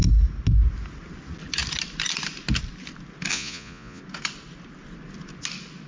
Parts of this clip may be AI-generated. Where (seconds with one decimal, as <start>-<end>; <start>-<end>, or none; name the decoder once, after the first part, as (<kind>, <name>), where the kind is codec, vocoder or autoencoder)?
3.3-4.0 (vocoder, Vocos)